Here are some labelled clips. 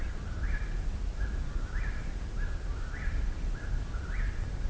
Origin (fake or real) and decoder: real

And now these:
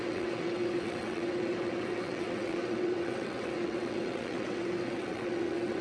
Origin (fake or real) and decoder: fake, vocoder, WaveNeXt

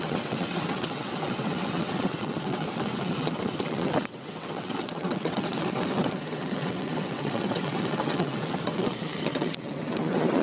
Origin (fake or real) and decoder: fake, vocoder, WaveNeXt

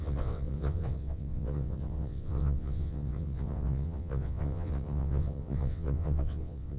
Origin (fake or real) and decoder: fake, vocoder, WaveNeXt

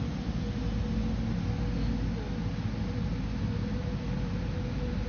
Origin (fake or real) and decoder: real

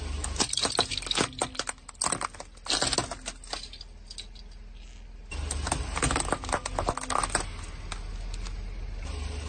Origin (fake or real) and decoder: real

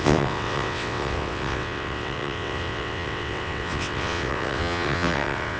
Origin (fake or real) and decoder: fake, vocoder, WaveNeXt